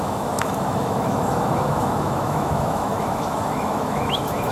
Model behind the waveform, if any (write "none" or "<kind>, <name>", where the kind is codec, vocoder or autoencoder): autoencoder, DAC-VAE